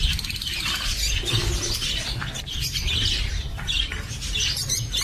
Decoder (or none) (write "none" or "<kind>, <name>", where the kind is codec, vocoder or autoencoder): none